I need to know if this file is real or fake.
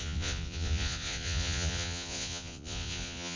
fake